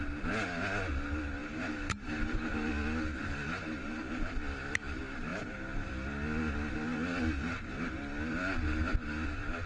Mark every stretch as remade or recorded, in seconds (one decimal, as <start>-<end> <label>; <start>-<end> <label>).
0.0-1.4 recorded; 1.4-2.7 remade; 2.7-5.3 recorded; 5.3-5.9 remade; 5.9-9.7 recorded